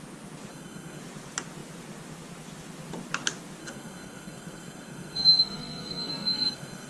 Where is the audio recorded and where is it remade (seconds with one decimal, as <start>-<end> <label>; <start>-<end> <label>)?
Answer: 0.0-0.5 recorded; 0.5-1.0 remade; 1.0-3.6 recorded; 3.6-6.9 remade